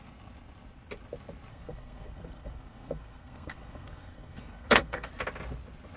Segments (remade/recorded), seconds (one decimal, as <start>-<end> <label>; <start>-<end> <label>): 0.0-1.5 recorded; 1.5-5.1 remade; 5.1-6.0 recorded